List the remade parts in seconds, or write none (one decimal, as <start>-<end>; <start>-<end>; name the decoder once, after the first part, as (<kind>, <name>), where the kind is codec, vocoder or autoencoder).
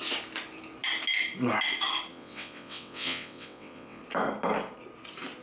2.1-4.0 (vocoder, WaveNeXt)